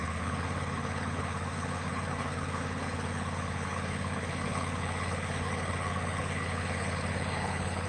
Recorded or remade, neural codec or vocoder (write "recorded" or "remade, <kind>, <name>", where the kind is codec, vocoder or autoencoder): remade, codec, HILCodec